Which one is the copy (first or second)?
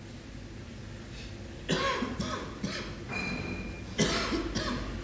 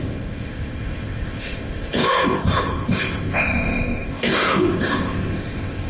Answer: second